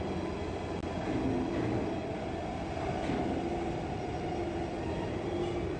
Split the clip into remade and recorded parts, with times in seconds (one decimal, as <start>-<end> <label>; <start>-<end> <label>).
0.0-5.8 recorded